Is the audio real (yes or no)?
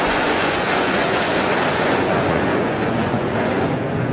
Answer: no